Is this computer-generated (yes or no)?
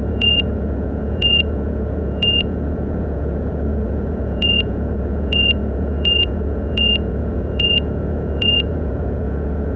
yes